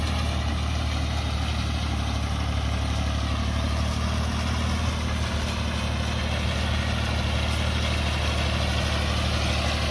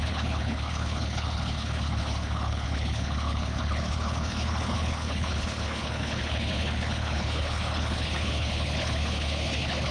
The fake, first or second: second